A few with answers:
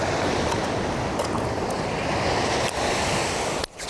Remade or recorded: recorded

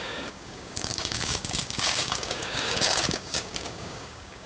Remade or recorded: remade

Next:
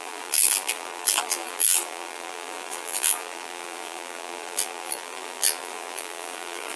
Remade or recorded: remade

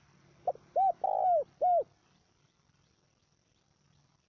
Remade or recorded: recorded